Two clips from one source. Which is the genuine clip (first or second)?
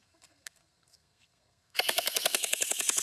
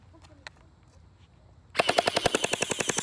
second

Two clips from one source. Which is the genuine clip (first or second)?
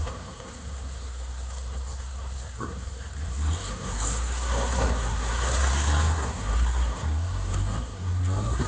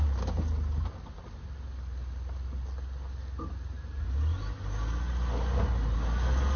second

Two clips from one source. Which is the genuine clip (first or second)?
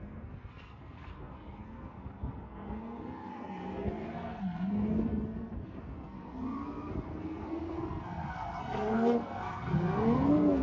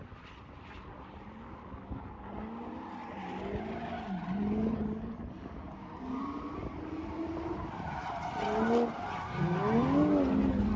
second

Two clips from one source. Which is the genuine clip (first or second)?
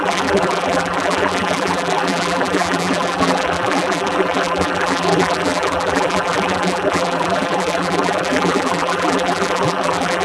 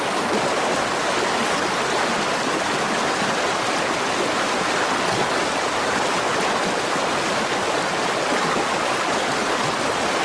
second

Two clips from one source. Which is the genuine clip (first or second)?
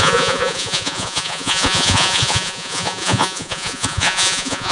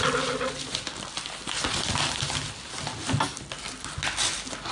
second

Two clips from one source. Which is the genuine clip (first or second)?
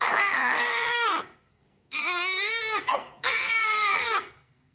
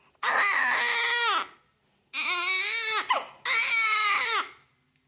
second